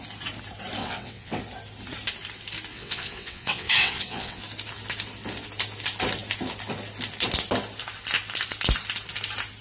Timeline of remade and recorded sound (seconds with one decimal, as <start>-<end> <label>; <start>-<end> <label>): 0.0-0.8 recorded; 0.8-1.4 remade; 1.4-2.7 recorded; 2.7-4.4 remade; 4.4-9.6 recorded